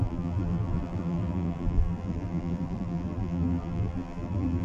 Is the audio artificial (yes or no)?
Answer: yes